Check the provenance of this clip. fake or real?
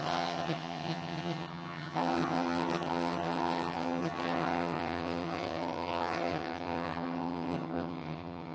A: fake